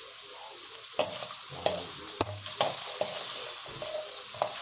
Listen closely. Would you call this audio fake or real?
real